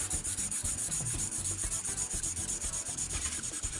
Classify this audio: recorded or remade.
remade